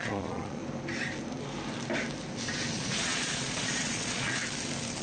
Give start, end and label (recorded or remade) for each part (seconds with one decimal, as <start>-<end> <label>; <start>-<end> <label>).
0.0-0.6 remade; 0.6-2.7 recorded; 2.7-4.4 remade; 4.4-5.0 recorded